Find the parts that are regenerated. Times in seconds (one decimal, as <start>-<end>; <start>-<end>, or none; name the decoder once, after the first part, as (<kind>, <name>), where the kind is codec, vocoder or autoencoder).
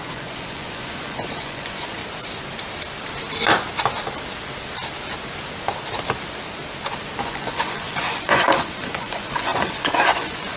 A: 0.0-2.0 (vocoder, Vocos); 7.2-10.6